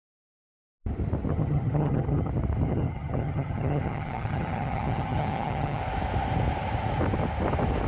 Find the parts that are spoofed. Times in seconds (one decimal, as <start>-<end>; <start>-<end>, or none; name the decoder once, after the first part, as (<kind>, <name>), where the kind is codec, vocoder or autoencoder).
1.3-2.3 (vocoder, HiFi-GAN); 2.7-5.8